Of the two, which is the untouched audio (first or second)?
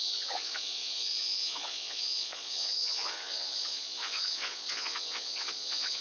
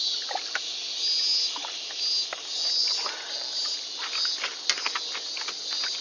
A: second